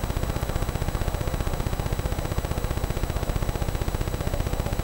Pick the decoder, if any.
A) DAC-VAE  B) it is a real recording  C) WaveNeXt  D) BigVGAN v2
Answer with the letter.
B